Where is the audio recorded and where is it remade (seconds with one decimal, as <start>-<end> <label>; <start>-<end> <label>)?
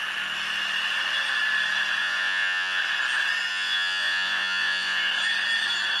0.0-2.0 recorded; 2.0-2.8 remade; 2.8-3.5 recorded; 3.5-5.1 remade; 5.1-6.0 recorded